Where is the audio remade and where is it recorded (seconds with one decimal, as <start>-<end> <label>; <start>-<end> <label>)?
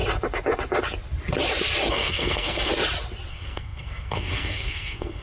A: 0.0-1.9 recorded; 1.9-2.7 remade; 2.7-3.3 recorded; 3.3-5.2 remade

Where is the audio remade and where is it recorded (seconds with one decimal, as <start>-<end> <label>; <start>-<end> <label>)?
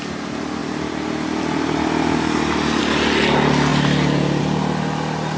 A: 0.0-5.4 recorded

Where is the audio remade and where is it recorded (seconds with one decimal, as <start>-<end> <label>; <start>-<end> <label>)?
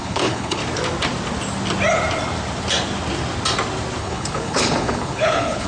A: 0.0-0.6 remade; 0.6-4.0 recorded; 4.0-5.7 remade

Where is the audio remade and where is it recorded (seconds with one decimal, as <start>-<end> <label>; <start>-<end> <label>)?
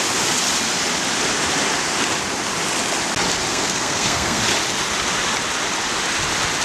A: 0.0-3.5 recorded; 3.5-4.4 remade; 4.4-6.6 recorded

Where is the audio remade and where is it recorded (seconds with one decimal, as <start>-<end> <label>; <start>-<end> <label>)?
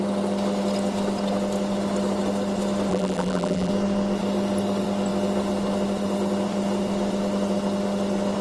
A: 0.0-2.9 recorded; 2.9-3.7 remade; 3.7-8.4 recorded